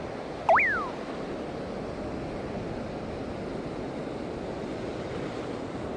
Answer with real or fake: real